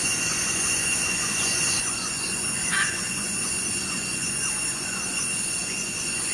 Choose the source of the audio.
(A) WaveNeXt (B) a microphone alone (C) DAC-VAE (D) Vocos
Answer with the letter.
D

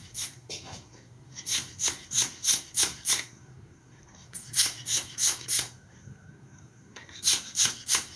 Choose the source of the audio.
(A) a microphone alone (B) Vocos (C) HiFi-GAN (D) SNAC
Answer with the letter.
D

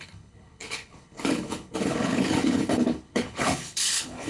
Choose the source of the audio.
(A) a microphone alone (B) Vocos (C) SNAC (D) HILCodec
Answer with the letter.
D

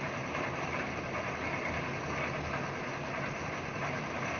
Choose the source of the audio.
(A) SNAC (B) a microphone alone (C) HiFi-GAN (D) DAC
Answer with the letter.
B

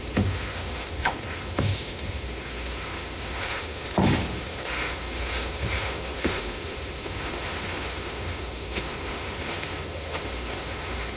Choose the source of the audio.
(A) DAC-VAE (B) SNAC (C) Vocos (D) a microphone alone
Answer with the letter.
A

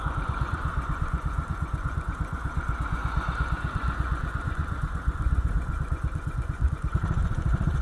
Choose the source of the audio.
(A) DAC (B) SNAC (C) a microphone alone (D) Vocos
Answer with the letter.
D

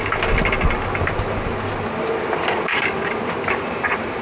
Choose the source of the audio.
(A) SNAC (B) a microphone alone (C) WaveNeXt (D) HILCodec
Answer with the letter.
B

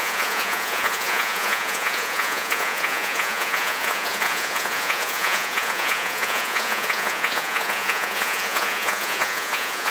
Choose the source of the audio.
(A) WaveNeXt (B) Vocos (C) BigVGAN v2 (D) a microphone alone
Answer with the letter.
B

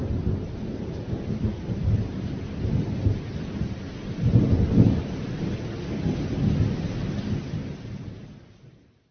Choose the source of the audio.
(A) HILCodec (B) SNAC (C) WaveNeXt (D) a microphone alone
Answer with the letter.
D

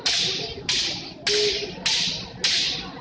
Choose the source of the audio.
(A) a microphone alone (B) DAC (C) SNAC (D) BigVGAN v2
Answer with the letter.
A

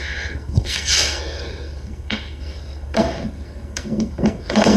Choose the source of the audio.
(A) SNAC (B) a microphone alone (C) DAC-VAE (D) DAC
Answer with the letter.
A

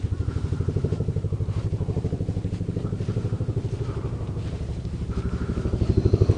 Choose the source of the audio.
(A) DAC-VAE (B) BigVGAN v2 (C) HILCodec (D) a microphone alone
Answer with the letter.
B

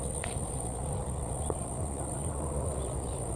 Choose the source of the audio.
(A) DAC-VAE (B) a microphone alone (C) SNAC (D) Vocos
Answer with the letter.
D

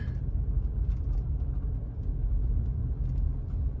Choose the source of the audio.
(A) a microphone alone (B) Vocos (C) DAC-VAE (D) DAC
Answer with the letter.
A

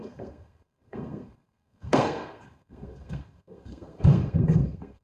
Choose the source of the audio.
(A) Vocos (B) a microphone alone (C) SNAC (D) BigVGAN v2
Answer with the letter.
C